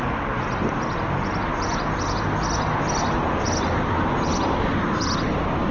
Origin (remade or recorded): recorded